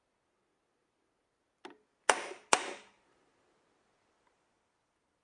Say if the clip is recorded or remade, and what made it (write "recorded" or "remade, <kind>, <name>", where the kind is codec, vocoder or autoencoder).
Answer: recorded